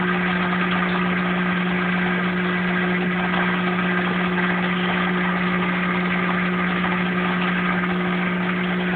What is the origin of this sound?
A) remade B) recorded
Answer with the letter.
B